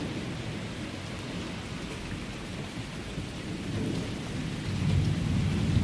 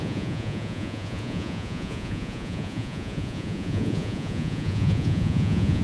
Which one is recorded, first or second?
first